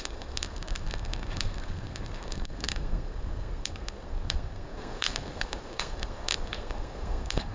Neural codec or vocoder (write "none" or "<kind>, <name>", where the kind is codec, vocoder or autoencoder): codec, SNAC